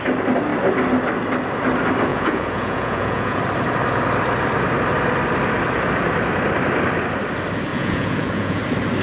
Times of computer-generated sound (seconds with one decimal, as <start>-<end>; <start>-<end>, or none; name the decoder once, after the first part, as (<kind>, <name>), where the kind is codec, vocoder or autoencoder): 2.1-3.4 (vocoder, Vocos); 7.7-8.6